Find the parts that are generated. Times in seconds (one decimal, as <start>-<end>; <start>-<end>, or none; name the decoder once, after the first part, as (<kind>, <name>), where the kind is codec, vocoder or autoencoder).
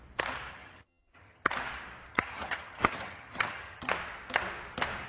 0.5-1.5 (vocoder, HiFi-GAN); 2.1-3.9